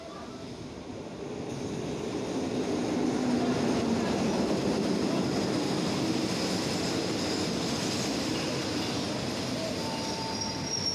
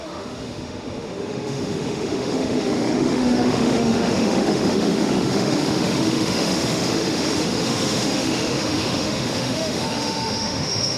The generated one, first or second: second